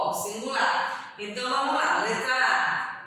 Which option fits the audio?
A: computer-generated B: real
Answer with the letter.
B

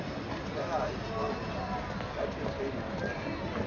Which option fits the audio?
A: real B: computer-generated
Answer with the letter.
A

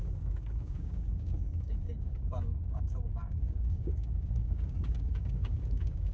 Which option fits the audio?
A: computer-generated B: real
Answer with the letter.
A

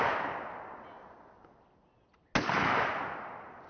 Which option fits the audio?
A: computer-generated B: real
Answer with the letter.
B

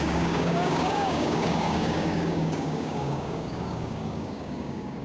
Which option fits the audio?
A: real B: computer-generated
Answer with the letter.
B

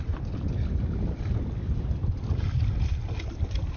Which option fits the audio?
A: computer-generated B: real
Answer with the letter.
B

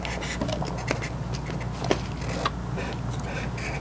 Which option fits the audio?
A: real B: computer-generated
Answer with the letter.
A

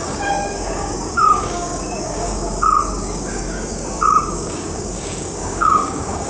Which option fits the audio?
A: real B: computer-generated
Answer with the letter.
B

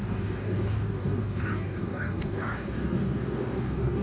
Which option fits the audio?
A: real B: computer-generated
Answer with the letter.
B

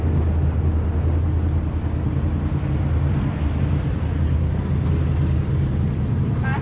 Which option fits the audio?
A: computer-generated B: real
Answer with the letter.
B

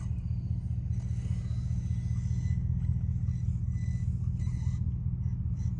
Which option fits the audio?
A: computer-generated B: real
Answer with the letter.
B